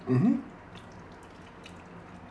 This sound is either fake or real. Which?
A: real